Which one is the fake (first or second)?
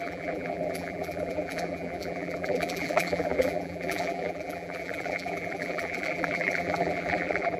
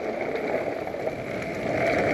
first